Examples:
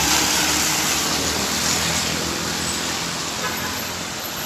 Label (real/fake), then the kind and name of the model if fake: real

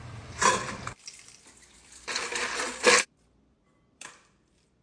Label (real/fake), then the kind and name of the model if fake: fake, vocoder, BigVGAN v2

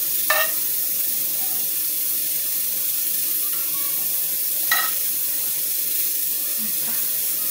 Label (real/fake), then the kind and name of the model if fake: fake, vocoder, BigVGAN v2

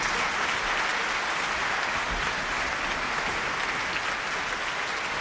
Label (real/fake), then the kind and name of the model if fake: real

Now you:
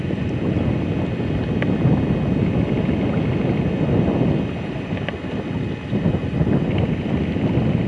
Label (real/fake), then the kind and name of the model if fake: real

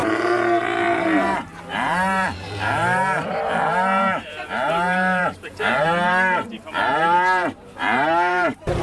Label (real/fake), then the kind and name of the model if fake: fake, vocoder, BigVGAN v2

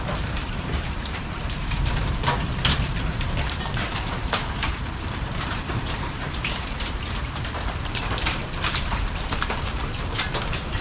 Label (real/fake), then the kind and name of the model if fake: fake, vocoder, BigVGAN v2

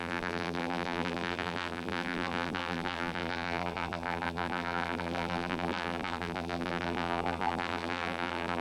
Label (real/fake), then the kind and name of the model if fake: fake, vocoder, BigVGAN v2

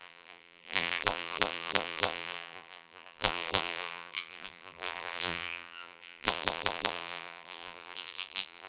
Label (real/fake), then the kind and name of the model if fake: fake, vocoder, BigVGAN v2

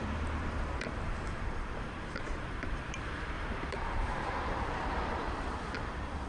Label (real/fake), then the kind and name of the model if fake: fake, vocoder, BigVGAN v2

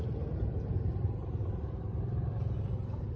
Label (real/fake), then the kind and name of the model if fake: fake, vocoder, BigVGAN v2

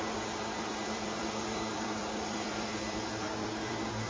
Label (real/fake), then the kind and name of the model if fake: fake, vocoder, BigVGAN v2